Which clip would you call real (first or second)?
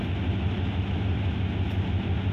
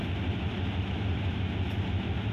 first